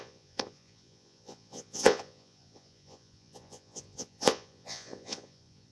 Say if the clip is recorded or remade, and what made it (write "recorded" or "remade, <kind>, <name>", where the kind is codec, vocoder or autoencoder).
remade, vocoder, Vocos